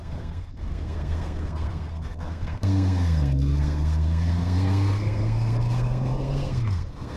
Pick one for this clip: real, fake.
fake